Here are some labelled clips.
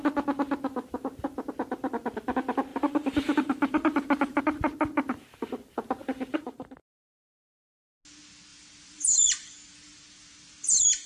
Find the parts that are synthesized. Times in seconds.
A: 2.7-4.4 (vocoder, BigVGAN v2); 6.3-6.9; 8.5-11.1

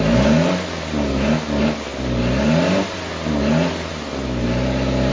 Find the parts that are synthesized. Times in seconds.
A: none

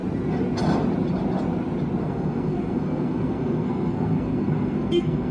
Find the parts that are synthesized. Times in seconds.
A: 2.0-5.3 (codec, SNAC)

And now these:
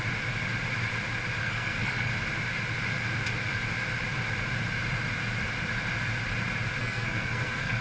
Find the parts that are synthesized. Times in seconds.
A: 1.4-2.1 (codec, SNAC); 6.8-7.8